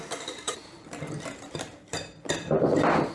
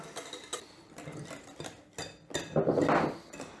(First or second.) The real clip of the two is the second